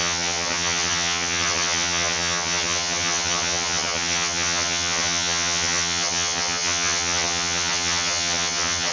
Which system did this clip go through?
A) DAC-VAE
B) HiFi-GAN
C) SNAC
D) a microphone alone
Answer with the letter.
B